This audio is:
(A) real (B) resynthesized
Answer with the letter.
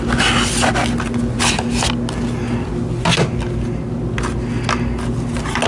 A